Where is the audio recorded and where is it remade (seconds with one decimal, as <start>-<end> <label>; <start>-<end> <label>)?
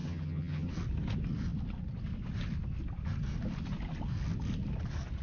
0.0-0.7 remade; 0.7-5.2 recorded